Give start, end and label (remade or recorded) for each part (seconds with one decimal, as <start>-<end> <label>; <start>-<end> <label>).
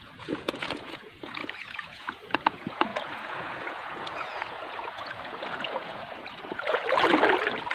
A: 0.0-6.8 remade; 6.8-7.7 recorded